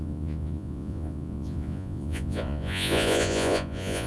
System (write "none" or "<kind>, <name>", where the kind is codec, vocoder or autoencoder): vocoder, Vocos